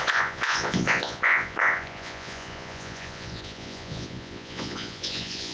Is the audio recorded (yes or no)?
no